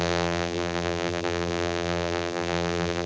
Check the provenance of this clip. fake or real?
fake